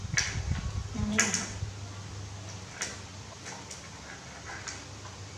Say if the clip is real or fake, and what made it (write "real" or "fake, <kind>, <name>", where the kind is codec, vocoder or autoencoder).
real